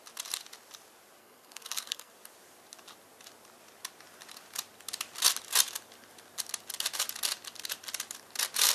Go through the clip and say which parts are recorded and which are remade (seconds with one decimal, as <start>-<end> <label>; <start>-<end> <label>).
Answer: 0.0-1.2 recorded; 1.2-2.1 remade; 2.1-8.7 recorded